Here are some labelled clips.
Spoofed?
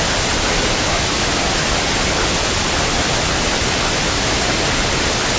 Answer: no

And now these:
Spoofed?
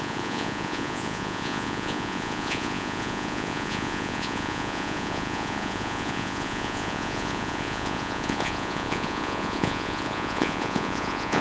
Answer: yes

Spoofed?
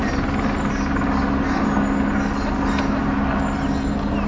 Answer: no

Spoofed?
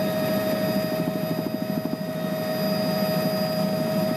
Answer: no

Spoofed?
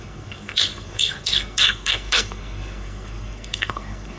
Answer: yes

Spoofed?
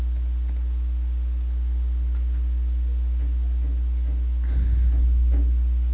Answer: no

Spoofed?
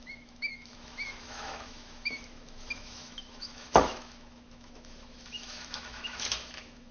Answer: yes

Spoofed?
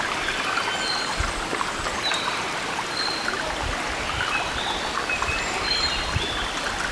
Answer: no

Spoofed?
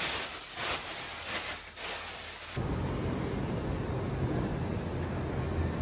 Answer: no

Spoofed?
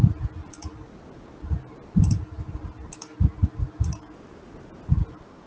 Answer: no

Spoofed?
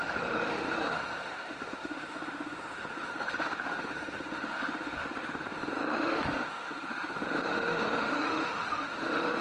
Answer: yes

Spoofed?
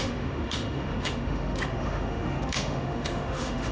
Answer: yes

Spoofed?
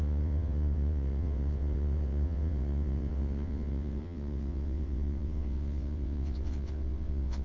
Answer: yes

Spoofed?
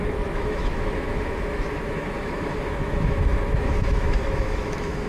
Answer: yes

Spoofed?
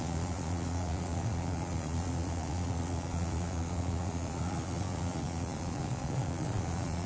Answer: yes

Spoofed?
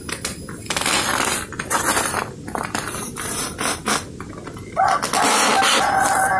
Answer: no